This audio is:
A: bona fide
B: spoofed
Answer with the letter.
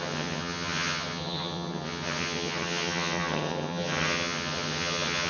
B